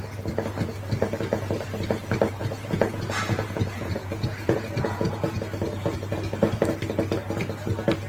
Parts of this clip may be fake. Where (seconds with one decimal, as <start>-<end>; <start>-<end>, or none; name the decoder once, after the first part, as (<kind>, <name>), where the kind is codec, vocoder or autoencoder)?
2.4-5.2 (vocoder, Vocos)